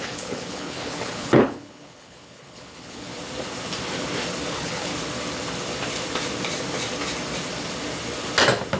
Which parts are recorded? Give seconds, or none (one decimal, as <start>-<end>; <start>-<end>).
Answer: 3.1-4.5; 4.9-8.8